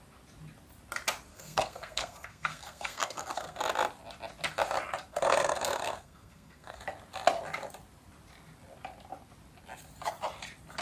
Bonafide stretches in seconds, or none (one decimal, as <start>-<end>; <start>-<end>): 0.0-1.3; 3.6-5.1; 6.8-10.8